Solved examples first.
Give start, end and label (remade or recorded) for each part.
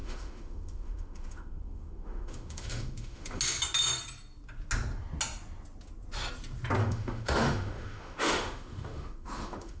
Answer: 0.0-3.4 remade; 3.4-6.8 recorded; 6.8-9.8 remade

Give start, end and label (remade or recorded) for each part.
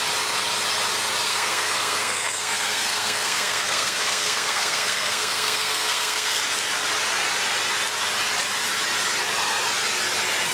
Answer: 0.0-1.3 recorded; 1.3-6.4 remade; 6.4-10.5 recorded